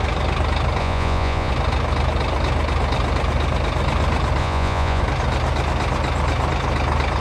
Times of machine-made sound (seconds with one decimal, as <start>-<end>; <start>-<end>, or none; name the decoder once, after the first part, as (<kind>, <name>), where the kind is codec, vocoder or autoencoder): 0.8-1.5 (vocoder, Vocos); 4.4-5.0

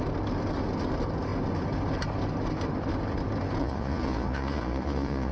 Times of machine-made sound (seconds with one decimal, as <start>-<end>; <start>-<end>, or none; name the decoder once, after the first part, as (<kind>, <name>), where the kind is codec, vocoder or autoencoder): 3.6-5.3 (vocoder, Vocos)

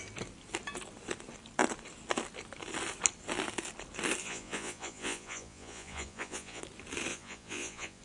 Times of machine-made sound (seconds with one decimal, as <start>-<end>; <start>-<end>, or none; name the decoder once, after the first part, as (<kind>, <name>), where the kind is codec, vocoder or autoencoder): 4.2-6.6 (vocoder, Vocos); 7.1-8.0

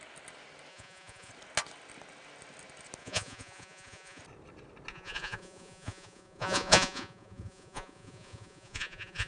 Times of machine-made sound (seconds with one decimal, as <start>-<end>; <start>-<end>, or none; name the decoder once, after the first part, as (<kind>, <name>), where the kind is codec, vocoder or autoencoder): 0.7-1.3 (vocoder, Vocos); 3.0-4.2; 4.9-9.3

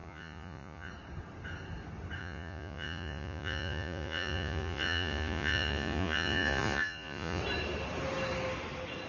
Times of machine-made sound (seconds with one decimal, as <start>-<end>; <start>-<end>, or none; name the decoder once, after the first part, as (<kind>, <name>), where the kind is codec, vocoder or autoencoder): 0.0-0.9 (vocoder, Vocos); 2.2-7.4

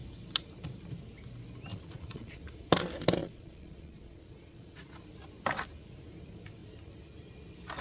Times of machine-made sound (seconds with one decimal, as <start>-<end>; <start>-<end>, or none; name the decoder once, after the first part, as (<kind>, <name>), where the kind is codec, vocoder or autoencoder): 1.7-2.4 (vocoder, Vocos); 3.2-4.9

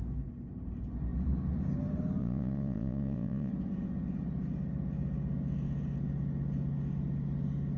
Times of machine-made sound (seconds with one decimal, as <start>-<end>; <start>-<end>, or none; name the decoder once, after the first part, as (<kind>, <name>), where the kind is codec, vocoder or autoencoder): 2.2-3.5 (vocoder, Vocos)

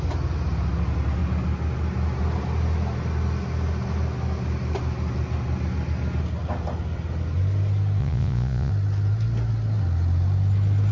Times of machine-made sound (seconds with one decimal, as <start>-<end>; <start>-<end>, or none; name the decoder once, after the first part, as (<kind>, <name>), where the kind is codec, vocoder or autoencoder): 8.0-8.7 (vocoder, Vocos)